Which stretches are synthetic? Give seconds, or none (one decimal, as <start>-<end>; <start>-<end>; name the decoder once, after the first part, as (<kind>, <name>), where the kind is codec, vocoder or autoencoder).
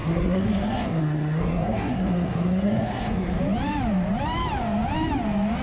0.0-3.4 (codec, SNAC)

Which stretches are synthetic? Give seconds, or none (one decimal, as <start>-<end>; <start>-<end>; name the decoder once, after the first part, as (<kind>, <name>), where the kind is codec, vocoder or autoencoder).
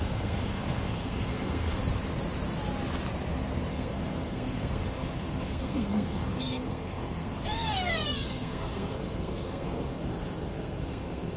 0.0-1.8 (codec, SNAC); 3.7-11.4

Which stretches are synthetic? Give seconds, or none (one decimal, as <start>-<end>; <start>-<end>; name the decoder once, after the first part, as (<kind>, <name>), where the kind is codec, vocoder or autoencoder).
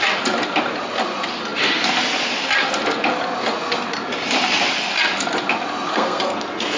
5.9-6.8 (codec, SNAC)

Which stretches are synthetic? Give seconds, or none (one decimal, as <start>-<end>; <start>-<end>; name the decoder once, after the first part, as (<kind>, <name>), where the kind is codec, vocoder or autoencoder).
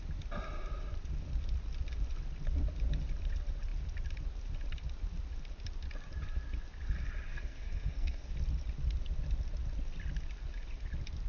7.3-8.3 (codec, SNAC)